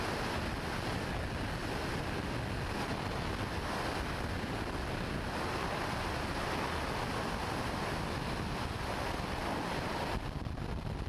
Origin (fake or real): real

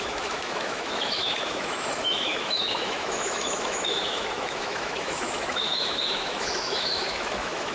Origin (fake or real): fake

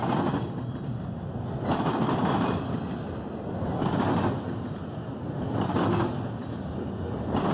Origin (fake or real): real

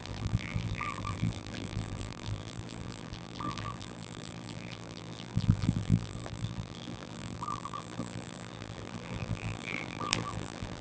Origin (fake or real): fake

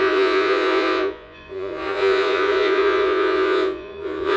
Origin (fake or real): fake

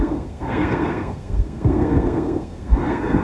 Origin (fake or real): fake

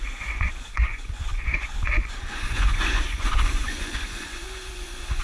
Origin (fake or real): fake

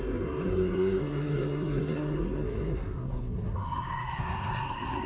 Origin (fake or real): fake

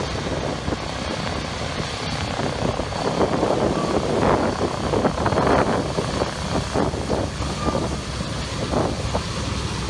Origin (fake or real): real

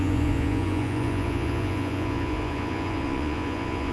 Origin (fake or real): fake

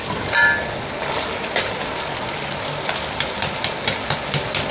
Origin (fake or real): real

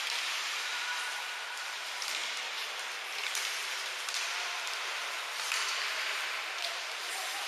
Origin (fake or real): real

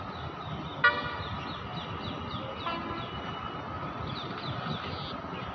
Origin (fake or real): real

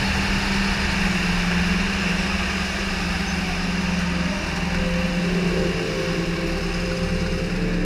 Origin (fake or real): real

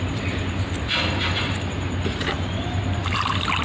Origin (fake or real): real